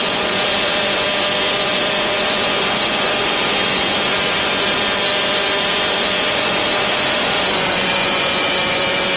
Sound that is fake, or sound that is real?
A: fake